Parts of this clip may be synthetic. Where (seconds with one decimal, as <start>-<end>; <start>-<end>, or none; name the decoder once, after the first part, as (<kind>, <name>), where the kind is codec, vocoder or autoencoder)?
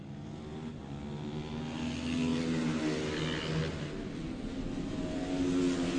none